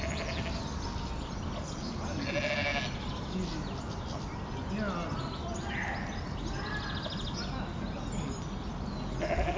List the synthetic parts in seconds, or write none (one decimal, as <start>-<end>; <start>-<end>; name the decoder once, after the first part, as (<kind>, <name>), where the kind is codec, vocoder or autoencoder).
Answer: none